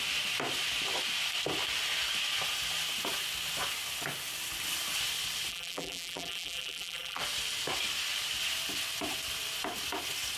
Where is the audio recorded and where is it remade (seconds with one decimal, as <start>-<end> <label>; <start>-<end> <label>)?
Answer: 0.0-5.5 recorded; 5.5-7.2 remade; 7.2-10.4 recorded